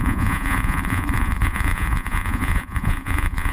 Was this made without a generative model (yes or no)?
no